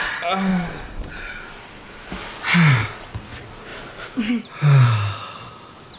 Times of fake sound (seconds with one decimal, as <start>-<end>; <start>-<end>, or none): none